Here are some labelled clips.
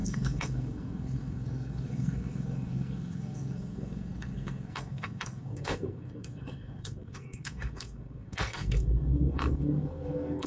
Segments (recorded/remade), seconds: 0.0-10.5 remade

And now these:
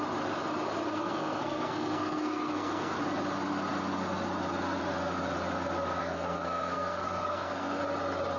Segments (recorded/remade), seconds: 0.0-0.9 recorded; 0.9-3.0 remade; 3.0-6.0 recorded; 6.0-7.8 remade; 7.8-8.4 recorded

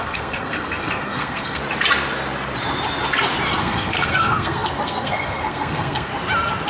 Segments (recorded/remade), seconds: 0.0-1.6 remade; 1.6-3.6 recorded; 3.6-6.1 remade; 6.1-6.7 recorded

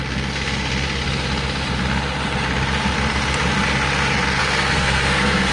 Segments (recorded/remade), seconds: 0.0-4.4 recorded; 4.4-5.5 remade

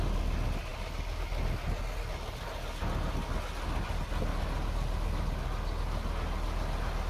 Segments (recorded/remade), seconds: 0.0-7.1 recorded

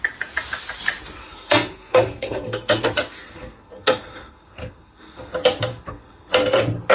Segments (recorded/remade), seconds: 0.0-1.2 recorded; 1.2-5.3 remade; 5.3-5.7 recorded; 5.7-6.3 remade; 6.3-6.9 recorded

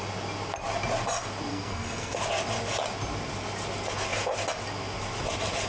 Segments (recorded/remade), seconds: 0.0-1.5 recorded; 1.5-2.2 remade; 2.2-5.7 recorded

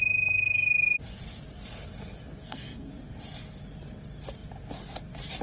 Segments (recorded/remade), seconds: 0.0-2.4 recorded; 2.4-2.9 remade; 2.9-5.4 recorded